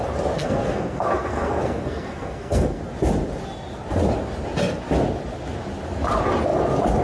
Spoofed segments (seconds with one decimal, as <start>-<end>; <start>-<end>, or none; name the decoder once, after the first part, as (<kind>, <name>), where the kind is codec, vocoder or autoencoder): 0.4-2.8 (codec, SNAC)